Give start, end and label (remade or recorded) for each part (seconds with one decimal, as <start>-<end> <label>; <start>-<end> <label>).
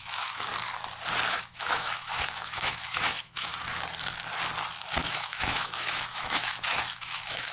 0.0-0.5 remade; 0.5-1.3 recorded; 1.3-3.5 remade; 3.5-4.8 recorded; 4.8-7.5 remade